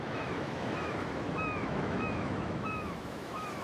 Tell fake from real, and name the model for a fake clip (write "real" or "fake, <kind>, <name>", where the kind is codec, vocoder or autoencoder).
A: fake, autoencoder, DAC-VAE